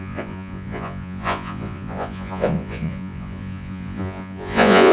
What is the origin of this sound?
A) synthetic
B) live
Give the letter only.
A